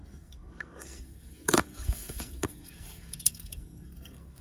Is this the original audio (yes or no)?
no